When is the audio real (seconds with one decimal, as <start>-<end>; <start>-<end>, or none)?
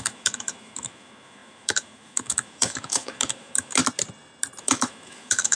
3.8-4.6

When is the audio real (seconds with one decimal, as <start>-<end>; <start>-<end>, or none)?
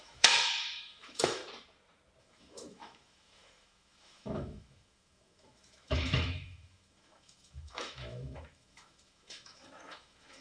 1.4-2.2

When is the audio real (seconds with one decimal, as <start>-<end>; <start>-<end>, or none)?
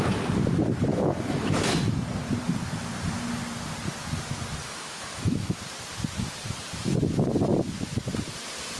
0.0-0.9; 1.8-4.6; 5.6-8.8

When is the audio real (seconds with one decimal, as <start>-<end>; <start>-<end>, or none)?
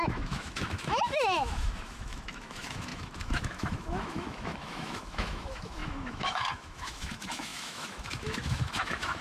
none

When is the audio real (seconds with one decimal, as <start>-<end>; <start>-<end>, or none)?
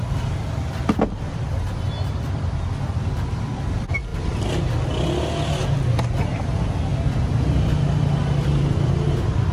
0.0-9.5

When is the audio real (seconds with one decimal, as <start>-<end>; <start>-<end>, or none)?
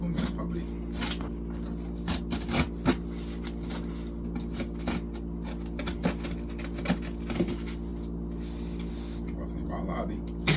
0.0-10.6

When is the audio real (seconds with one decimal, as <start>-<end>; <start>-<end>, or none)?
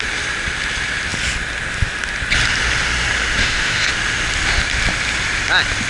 0.0-3.4; 3.9-5.9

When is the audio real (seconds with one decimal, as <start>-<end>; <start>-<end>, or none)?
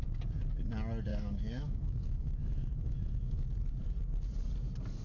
0.0-1.1; 3.4-5.0